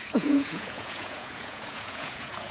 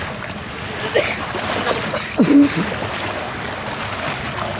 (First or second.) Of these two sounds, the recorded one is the second